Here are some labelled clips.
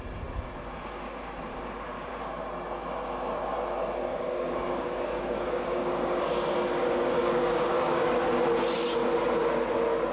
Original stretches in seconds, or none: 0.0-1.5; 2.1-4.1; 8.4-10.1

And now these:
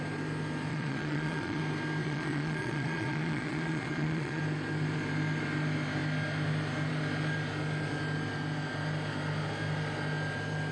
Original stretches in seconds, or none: 0.0-0.7; 1.6-2.0; 4.4-10.7

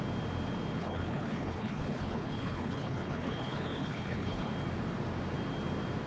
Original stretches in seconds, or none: 0.0-0.8; 4.5-6.1